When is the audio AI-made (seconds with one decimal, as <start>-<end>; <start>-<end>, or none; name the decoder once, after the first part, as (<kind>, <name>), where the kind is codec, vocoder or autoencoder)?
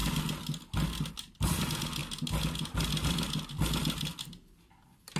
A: none